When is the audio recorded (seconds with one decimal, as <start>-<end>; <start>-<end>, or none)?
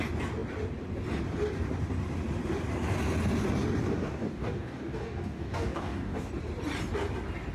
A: 0.0-3.8; 6.3-7.5